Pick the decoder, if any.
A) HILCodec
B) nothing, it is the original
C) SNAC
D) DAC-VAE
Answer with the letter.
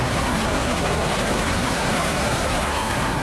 C